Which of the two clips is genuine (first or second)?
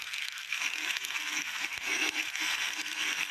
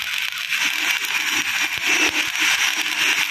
second